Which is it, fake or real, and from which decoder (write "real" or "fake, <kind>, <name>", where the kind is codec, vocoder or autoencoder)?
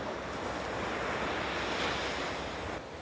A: real